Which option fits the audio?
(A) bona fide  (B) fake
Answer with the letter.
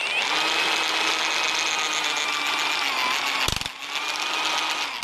A